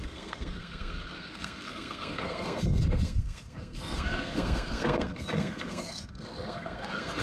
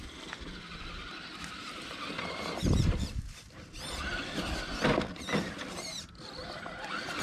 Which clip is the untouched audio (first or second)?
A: second